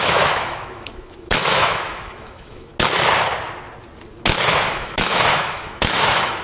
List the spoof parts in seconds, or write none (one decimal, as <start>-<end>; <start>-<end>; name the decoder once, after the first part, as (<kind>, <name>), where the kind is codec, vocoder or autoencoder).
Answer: 0.0-2.7 (autoencoder, DAC-VAE); 4.7-6.4